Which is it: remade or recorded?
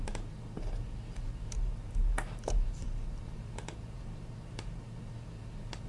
remade